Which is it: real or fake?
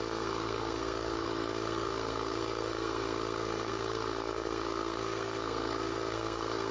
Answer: fake